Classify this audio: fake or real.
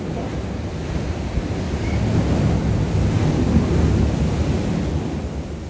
real